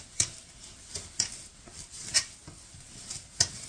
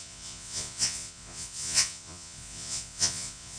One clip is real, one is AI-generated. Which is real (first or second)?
first